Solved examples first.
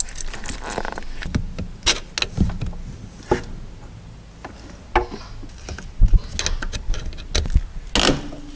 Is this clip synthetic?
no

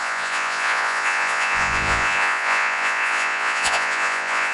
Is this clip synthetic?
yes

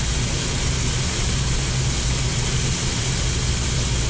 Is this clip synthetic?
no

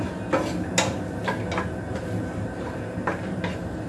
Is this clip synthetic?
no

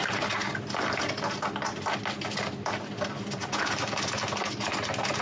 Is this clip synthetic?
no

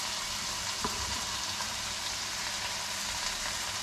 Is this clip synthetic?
no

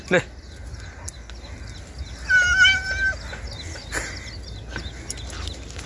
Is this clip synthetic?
no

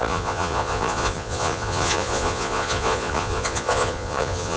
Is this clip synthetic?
yes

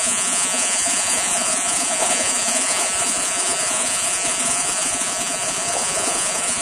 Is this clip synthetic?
yes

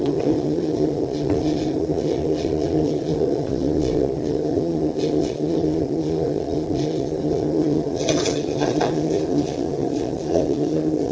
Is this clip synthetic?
yes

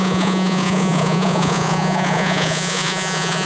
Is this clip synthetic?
yes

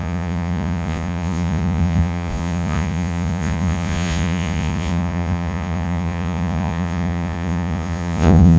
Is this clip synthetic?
yes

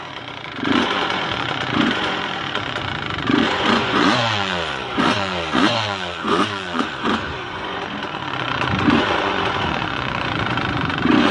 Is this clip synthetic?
yes